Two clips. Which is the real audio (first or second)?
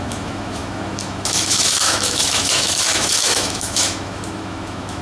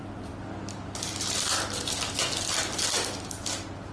second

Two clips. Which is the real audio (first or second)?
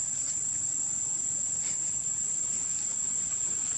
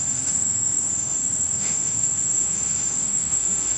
first